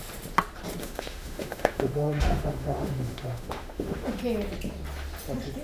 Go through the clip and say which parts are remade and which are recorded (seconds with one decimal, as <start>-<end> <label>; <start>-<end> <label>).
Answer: 0.0-0.8 recorded; 0.8-4.2 remade; 4.2-5.6 recorded